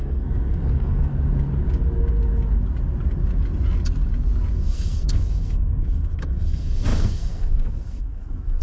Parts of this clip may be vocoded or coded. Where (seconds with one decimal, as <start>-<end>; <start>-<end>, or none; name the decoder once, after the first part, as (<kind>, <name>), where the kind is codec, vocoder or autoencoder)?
0.0-1.1 (codec, SNAC); 4.5-8.6